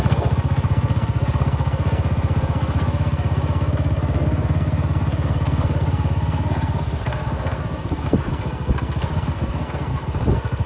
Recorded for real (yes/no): no